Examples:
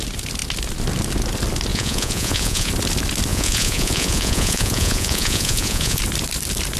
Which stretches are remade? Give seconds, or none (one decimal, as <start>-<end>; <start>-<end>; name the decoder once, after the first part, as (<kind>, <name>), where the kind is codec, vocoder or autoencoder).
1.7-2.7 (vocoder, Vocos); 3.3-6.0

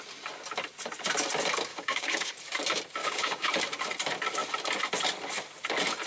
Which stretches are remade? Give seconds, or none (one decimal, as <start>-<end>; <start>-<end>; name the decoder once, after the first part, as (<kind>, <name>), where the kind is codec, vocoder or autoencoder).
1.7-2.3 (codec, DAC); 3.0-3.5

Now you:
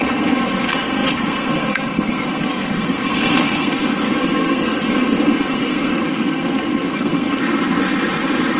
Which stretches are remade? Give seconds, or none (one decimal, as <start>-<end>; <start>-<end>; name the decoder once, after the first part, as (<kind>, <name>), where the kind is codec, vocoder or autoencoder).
0.0-7.4 (codec, SNAC)

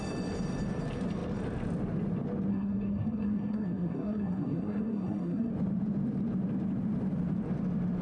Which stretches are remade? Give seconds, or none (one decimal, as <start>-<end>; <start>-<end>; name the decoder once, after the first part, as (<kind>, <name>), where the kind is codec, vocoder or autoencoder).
2.5-5.5 (codec, SNAC)

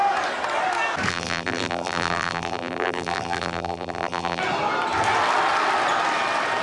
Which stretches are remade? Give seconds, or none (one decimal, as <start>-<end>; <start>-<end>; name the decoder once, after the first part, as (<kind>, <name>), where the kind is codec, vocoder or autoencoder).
1.1-4.4 (vocoder, BigVGAN v2)

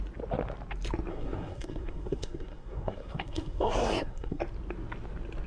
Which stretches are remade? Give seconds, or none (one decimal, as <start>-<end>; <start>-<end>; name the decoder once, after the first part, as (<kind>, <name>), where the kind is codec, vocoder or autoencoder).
1.1-4.4 (codec, SNAC)